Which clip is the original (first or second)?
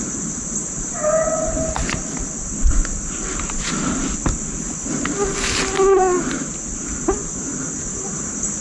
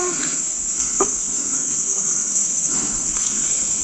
first